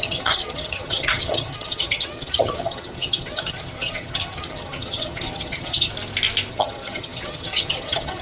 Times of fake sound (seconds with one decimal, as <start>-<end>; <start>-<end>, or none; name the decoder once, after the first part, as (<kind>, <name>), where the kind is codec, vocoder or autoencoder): 0.0-5.9 (vocoder, HiFi-GAN); 6.5-8.2

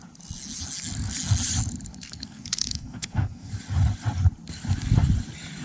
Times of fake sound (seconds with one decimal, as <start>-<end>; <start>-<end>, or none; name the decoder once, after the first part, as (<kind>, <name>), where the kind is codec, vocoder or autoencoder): 1.9-3.5 (codec, SNAC)

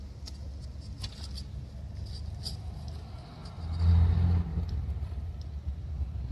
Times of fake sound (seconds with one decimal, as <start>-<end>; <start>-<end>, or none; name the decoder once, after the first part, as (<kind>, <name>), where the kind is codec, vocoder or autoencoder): 4.5-5.1 (vocoder, BigVGAN v2)

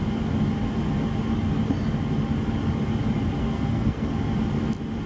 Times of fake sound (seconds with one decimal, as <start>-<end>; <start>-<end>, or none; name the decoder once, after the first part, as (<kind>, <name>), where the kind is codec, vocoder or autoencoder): 3.4-4.1 (codec, SNAC)

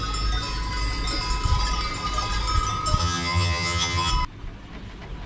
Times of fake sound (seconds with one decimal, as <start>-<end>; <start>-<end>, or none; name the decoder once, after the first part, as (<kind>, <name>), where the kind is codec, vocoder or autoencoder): 3.0-4.1 (vocoder, HiFi-GAN)

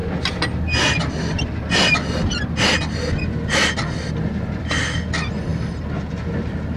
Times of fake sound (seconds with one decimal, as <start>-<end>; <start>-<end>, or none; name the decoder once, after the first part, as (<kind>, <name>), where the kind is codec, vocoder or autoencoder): none

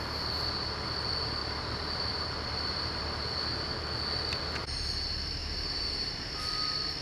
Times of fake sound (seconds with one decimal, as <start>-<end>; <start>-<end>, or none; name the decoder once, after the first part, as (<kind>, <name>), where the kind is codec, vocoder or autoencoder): 1.4-3.2 (vocoder, BigVGAN v2); 5.4-6.4